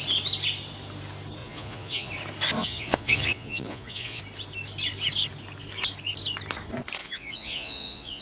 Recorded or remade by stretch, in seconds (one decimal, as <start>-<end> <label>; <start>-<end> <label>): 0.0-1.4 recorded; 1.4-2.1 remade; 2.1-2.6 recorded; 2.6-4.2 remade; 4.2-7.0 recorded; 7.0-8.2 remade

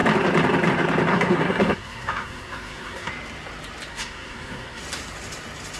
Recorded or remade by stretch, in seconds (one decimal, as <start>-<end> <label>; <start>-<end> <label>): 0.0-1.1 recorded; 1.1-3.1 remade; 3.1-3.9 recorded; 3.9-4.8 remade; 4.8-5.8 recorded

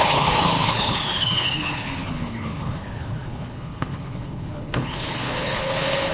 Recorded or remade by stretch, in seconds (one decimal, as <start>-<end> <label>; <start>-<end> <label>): 0.0-6.1 remade

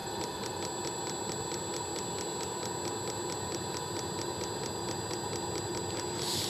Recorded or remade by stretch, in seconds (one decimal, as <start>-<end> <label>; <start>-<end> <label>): 0.0-0.6 remade; 0.6-6.5 recorded